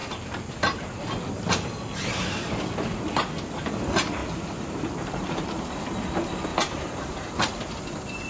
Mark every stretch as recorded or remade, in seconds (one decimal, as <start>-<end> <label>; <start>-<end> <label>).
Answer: 0.0-0.8 remade; 0.8-4.2 recorded; 4.2-5.5 remade; 5.5-6.5 recorded; 6.5-7.3 remade; 7.3-8.3 recorded